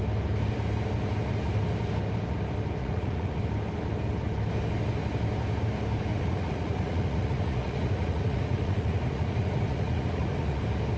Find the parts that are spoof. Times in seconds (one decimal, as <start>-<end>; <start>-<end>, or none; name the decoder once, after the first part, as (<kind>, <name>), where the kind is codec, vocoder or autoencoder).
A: 2.8-3.4 (vocoder, Vocos); 6.1-10.6